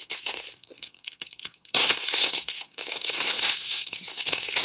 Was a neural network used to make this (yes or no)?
yes